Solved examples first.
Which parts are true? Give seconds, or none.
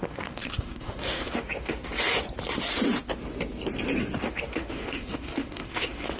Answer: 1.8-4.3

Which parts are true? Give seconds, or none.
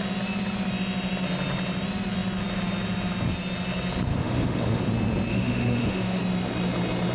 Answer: 0.0-4.1; 4.8-5.3; 6.2-7.1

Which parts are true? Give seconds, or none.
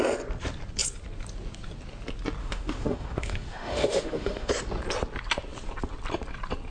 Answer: 0.0-2.4; 4.5-6.7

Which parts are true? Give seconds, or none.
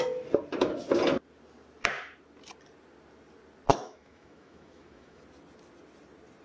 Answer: 0.0-3.7; 5.2-6.4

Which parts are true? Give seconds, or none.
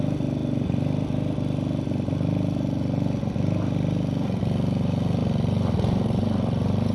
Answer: 0.0-6.9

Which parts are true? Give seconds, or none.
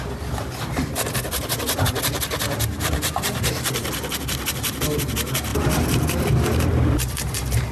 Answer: 0.0-7.7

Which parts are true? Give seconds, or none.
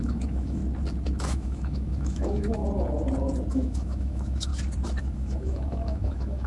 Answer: 0.6-1.2; 2.6-3.5; 4.5-5.0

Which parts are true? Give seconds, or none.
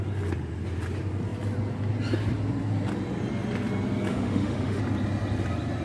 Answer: 0.0-4.1; 4.8-5.8